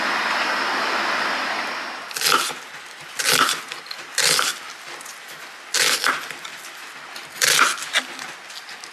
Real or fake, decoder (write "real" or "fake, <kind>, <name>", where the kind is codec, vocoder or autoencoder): real